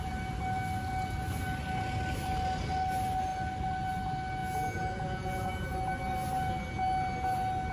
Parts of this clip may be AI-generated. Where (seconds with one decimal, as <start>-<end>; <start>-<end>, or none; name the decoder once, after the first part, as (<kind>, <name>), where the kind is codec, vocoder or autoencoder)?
4.4-5.5 (vocoder, Vocos)